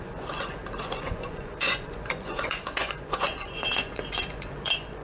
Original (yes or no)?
no